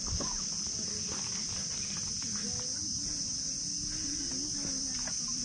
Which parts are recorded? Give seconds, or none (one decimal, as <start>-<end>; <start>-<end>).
0.0-5.4